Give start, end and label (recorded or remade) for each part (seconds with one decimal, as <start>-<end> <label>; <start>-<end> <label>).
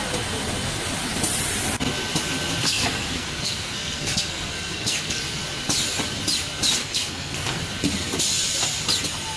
0.0-2.6 recorded; 2.6-5.2 remade; 5.2-6.8 recorded; 6.8-7.6 remade; 7.6-9.4 recorded